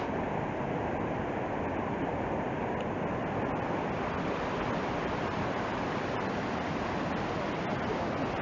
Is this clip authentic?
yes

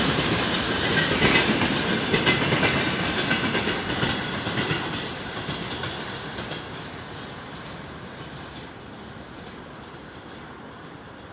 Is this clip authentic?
no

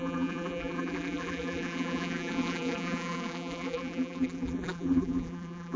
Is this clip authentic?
no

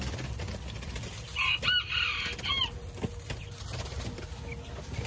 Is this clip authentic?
yes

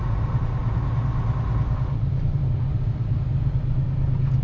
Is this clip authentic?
yes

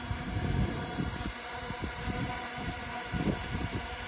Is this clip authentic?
no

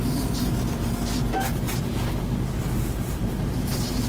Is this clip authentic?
yes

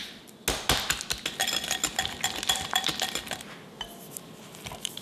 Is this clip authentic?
yes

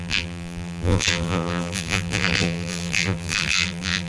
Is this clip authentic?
no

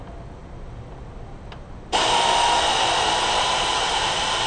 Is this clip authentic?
yes